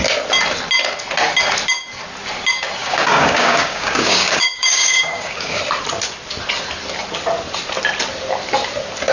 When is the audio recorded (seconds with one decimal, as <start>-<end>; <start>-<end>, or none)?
0.0-2.8; 5.6-9.1